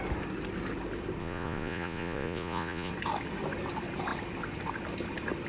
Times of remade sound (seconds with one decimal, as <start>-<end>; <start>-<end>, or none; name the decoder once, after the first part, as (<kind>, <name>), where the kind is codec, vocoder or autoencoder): 1.2-2.9 (vocoder, Vocos)